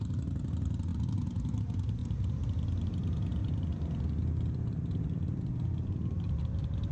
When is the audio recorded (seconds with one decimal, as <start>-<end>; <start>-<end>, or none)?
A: none